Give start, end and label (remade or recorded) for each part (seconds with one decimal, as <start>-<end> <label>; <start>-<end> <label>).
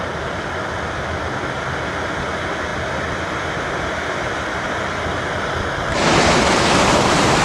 0.0-7.4 recorded